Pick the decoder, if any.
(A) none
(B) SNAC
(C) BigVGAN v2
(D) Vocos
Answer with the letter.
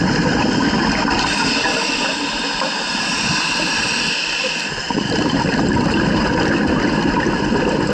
C